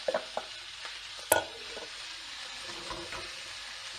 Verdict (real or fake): real